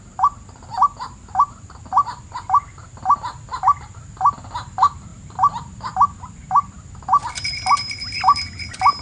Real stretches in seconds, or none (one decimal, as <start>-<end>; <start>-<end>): 0.0-9.0